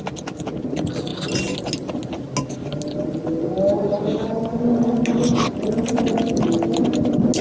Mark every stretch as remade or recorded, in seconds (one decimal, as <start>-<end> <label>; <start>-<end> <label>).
0.0-7.4 recorded